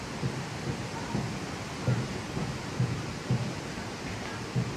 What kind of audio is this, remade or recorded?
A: recorded